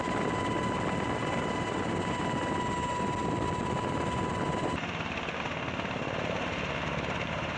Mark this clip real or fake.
real